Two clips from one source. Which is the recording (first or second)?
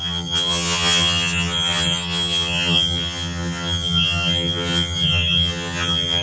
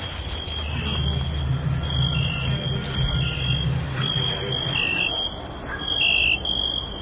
second